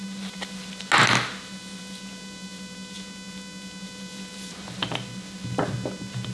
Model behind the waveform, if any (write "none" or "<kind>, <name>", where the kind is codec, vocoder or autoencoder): none